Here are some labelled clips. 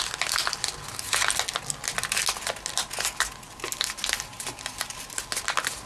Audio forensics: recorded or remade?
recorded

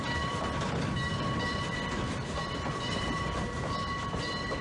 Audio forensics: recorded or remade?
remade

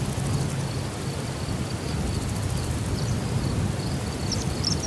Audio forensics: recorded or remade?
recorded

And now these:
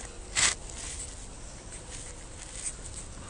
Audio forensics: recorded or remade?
recorded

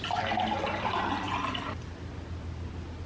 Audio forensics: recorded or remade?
recorded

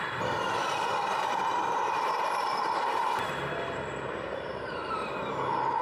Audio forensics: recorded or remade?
remade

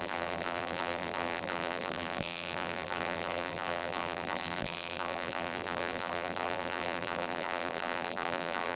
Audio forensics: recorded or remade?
remade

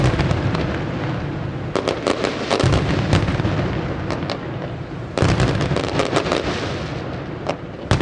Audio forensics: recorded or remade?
recorded